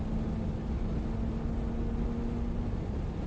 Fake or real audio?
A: real